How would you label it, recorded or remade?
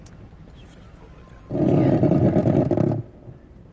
recorded